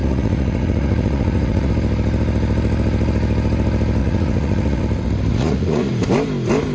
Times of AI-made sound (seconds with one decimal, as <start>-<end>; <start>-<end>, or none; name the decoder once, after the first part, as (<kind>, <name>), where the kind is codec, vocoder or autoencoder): 0.0-1.7 (vocoder, Vocos); 4.0-4.8; 5.3-5.9